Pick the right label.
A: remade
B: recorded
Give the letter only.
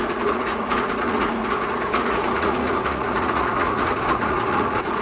A